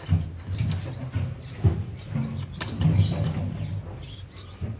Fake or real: real